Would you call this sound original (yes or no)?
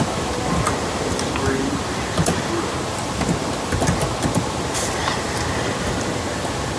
yes